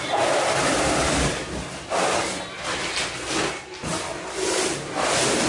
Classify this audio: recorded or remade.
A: recorded